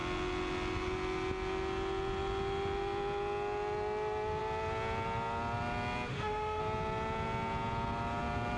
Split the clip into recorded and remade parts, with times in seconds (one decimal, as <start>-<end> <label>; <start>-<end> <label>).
0.0-6.1 recorded; 6.1-6.6 remade; 6.6-8.6 recorded